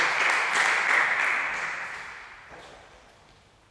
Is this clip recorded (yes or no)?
yes